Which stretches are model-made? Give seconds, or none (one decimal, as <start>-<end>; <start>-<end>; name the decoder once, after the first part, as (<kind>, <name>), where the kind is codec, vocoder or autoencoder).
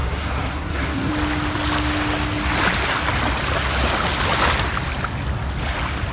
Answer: 0.0-1.1 (codec, SNAC)